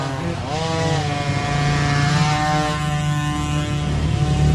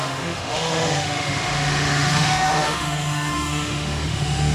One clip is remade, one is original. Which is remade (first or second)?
second